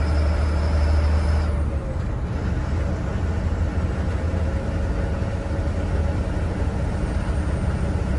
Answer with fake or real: real